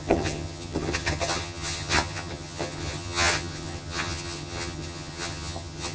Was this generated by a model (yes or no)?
yes